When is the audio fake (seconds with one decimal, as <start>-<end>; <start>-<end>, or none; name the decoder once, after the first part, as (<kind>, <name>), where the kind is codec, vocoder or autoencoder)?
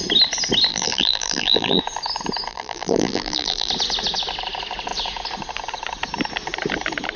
0.7-1.8 (vocoder, BigVGAN v2); 2.5-3.7